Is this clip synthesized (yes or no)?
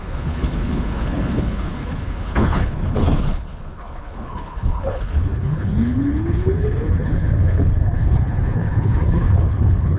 yes